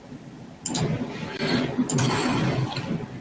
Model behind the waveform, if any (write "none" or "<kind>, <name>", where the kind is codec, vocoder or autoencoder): none